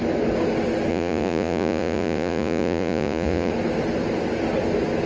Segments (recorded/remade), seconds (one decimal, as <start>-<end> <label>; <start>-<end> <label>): 0.0-0.9 recorded; 0.9-3.5 remade; 3.5-5.1 recorded